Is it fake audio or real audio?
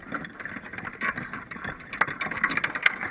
real